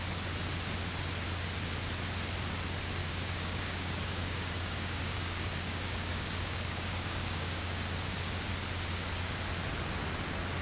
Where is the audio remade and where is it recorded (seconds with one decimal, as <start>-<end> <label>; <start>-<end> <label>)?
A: 0.0-3.0 recorded; 3.0-7.8 remade; 7.8-10.6 recorded